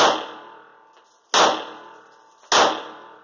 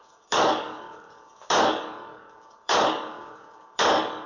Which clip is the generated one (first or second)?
second